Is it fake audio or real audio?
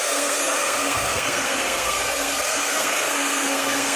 fake